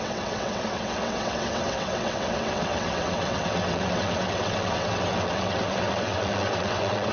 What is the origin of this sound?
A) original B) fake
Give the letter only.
B